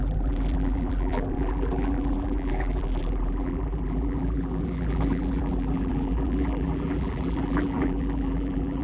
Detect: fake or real fake